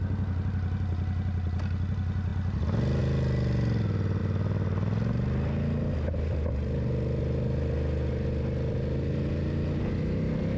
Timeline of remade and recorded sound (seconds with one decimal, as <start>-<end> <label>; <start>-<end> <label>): 0.0-10.6 recorded